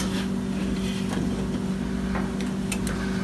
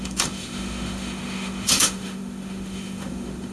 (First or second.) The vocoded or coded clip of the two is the second